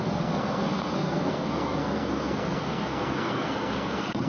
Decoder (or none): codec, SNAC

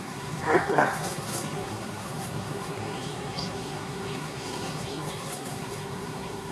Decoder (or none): codec, SNAC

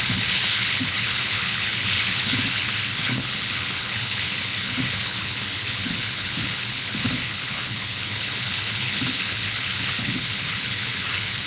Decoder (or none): codec, HILCodec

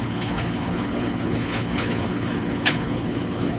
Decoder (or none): codec, HILCodec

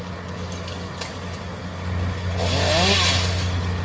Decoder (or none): none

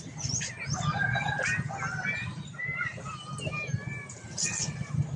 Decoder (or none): none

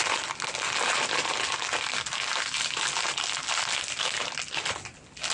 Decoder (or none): none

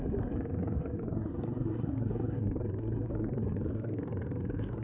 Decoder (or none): codec, SNAC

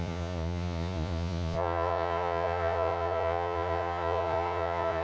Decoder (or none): vocoder, Vocos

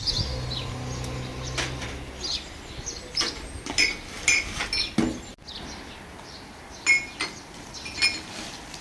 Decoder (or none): none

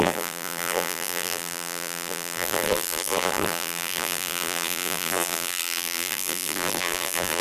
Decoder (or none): vocoder, BigVGAN v2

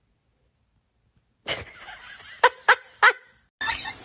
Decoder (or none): none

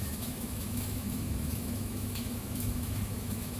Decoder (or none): autoencoder, DAC-VAE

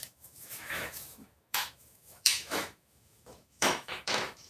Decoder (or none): autoencoder, DAC-VAE